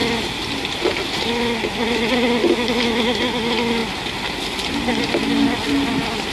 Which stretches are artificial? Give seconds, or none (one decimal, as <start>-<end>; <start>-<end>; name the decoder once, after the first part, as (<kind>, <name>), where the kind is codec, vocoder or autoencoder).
2.4-3.0 (autoencoder, DAC-VAE)